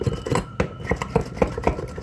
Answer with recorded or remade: recorded